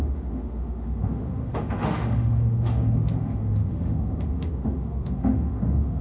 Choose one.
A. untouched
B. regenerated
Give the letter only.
B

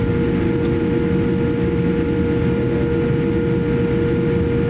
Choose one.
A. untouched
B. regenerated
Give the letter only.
A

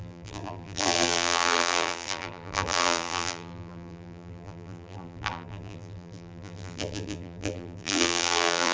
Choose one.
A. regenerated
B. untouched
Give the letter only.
A